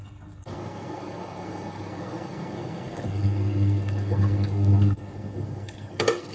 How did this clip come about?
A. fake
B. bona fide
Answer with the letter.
A